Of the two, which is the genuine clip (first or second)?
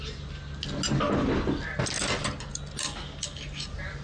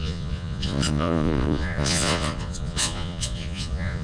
first